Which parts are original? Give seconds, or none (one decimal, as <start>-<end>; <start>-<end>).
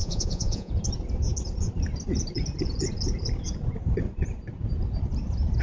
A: 0.7-5.6